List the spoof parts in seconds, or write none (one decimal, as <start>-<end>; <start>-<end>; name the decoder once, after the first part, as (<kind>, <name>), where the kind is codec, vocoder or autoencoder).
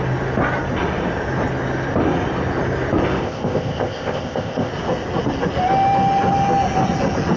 3.2-4.7 (codec, ZipCodec)